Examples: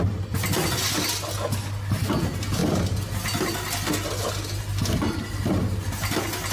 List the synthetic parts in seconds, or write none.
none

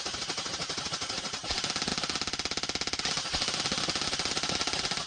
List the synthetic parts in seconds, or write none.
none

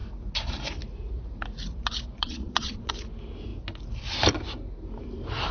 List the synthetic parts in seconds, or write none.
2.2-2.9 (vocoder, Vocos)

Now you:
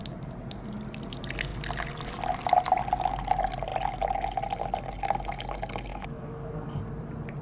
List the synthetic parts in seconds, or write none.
5.9-6.8 (codec, DAC)

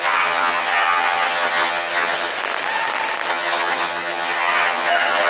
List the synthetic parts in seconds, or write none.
0.0-2.3 (vocoder, HiFi-GAN); 3.3-5.3

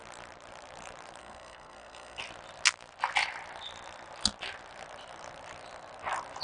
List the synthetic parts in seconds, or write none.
1.2-2.2 (codec, SNAC)